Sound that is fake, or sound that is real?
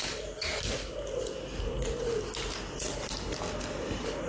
real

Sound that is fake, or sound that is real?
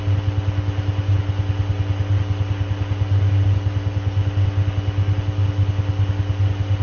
real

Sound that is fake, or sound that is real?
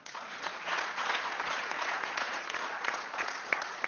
fake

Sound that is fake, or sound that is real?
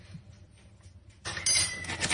real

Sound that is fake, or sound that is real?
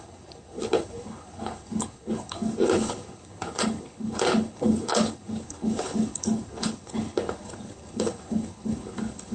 fake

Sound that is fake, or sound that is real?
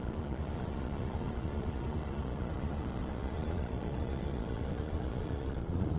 fake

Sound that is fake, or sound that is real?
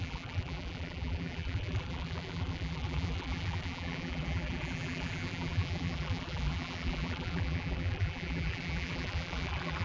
fake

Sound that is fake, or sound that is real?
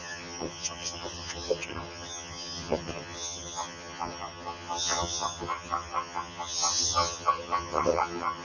fake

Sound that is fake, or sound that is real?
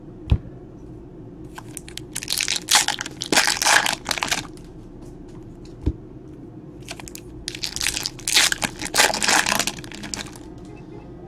real